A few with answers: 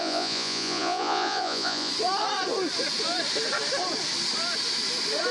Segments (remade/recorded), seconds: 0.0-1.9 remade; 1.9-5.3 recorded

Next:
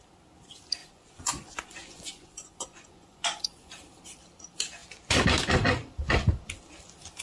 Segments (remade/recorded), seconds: 0.0-0.8 recorded; 0.8-3.7 remade; 3.7-7.2 recorded

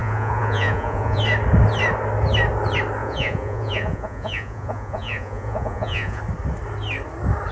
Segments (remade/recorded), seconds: 0.0-1.2 remade; 1.2-3.0 recorded; 3.0-6.2 remade; 6.2-7.5 recorded

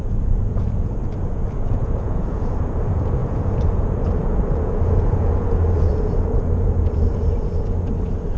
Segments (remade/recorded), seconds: 0.0-1.0 remade; 1.0-1.5 recorded; 1.5-8.4 remade

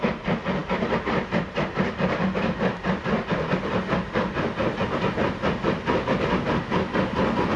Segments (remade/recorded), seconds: 0.0-7.6 recorded

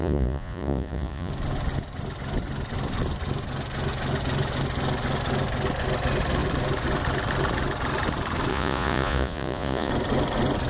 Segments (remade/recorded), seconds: 0.0-1.3 remade; 1.3-8.5 recorded; 8.5-9.9 remade; 9.9-10.7 recorded